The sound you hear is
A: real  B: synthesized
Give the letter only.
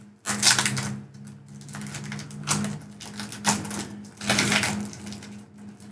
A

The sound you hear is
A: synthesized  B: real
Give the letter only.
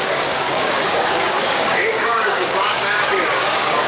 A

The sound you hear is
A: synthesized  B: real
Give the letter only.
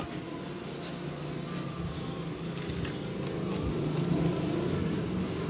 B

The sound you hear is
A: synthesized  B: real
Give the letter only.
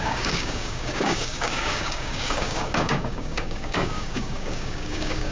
A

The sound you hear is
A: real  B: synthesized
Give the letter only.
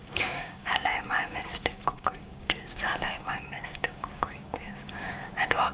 B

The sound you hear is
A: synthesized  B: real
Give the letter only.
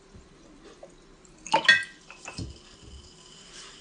B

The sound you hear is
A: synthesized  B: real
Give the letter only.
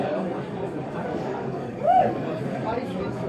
A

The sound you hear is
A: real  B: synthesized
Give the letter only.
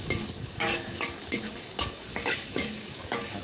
B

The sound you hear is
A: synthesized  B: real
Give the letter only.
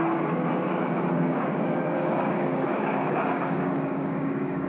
A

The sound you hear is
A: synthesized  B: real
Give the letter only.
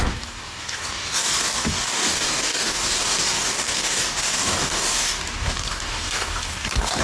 A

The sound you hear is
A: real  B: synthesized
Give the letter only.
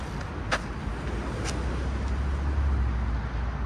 A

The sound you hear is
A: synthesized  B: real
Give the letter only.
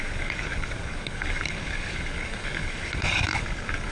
A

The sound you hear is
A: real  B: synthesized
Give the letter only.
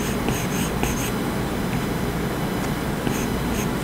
A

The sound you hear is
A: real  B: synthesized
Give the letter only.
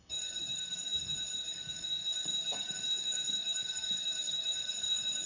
B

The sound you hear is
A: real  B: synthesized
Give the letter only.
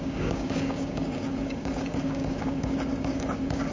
B